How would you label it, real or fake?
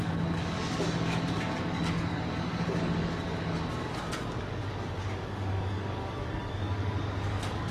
fake